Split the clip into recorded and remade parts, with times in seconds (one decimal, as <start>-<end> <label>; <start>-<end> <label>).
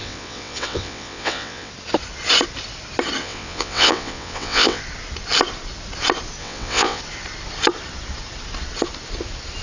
0.0-1.7 remade; 1.7-3.2 recorded; 3.2-4.8 remade; 4.8-6.4 recorded; 6.4-7.0 remade; 7.0-9.6 recorded